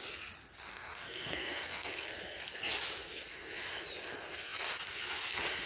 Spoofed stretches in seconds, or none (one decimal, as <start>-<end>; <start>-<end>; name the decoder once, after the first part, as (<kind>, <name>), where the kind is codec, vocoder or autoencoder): 0.7-1.9 (codec, SNAC)

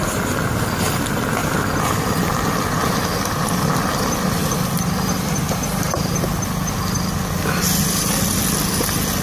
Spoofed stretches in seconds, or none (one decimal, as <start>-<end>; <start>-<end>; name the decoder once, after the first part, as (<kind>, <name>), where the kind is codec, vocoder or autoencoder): 4.4-6.1 (vocoder, BigVGAN v2)

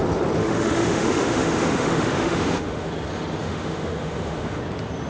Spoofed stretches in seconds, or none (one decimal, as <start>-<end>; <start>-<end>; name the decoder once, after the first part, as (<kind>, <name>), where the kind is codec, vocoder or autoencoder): 0.4-2.9 (autoencoder, DAC-VAE); 3.4-4.6

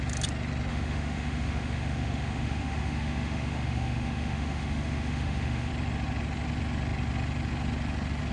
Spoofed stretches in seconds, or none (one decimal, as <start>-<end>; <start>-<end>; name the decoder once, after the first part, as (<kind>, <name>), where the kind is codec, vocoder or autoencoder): 0.7-5.7 (autoencoder, DAC-VAE)